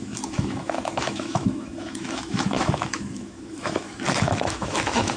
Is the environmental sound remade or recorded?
remade